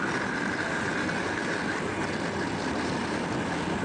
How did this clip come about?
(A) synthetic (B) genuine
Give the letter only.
B